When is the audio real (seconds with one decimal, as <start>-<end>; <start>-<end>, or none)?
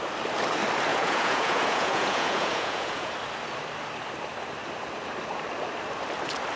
0.0-0.9; 3.1-6.6